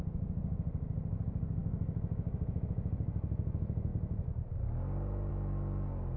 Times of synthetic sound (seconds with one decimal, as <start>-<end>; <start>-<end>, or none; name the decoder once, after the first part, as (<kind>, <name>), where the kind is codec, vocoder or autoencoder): 1.6-2.9 (autoencoder, DAC-VAE)